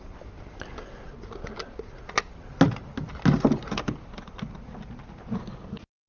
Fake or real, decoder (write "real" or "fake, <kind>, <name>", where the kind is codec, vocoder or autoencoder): real